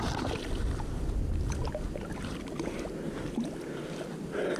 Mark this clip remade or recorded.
recorded